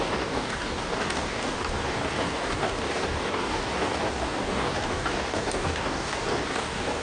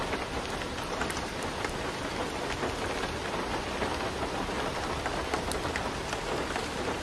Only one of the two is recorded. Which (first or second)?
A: second